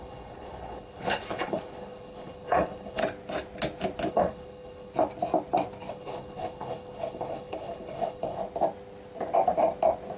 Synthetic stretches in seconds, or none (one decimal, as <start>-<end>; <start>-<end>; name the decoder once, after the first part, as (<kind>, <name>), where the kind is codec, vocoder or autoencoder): 0.0-3.0 (codec, HILCodec); 4.1-4.9; 5.9-8.4